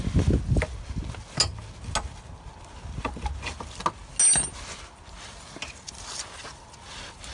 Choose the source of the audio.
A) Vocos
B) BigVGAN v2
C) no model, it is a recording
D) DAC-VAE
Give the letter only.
C